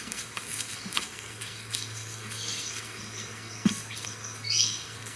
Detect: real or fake fake